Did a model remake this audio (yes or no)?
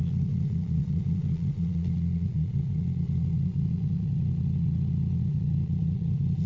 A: yes